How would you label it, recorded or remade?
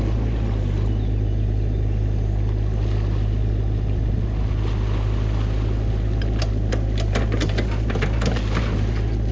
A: recorded